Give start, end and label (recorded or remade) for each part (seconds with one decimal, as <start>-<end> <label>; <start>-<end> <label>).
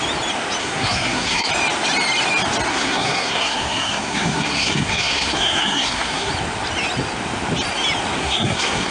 0.0-0.6 recorded; 0.6-1.5 remade; 1.5-2.7 recorded; 2.7-6.3 remade; 6.3-8.2 recorded; 8.2-8.9 remade